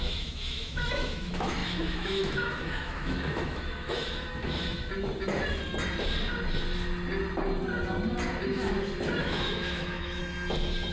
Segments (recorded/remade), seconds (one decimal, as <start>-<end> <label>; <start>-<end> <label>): 0.0-4.9 remade; 4.9-9.2 recorded; 9.2-10.2 remade; 10.2-10.9 recorded

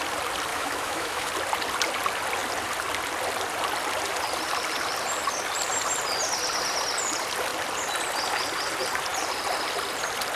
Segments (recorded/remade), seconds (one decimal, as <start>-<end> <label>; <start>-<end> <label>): 0.0-0.5 recorded; 0.5-1.3 remade; 1.3-10.4 recorded

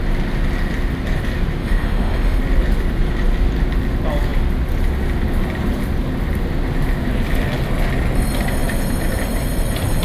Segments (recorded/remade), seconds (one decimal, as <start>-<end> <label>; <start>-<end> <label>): 0.0-1.6 recorded; 1.6-2.4 remade; 2.4-10.0 recorded

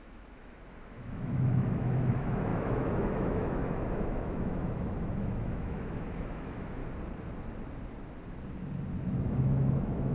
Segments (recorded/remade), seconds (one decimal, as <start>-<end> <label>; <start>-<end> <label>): 0.0-6.8 remade; 6.8-8.9 recorded; 8.9-10.1 remade